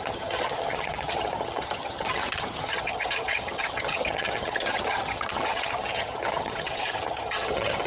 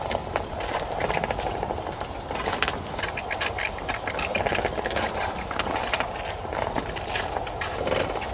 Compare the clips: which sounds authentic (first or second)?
second